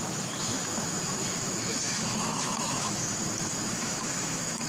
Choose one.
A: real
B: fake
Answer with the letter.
B